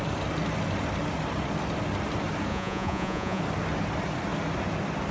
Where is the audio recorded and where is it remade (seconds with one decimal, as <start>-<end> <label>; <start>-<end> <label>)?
0.0-2.5 recorded; 2.5-3.4 remade; 3.4-5.1 recorded